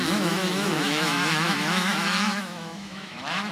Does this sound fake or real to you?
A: fake